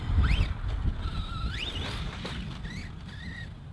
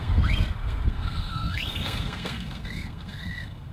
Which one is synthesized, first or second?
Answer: second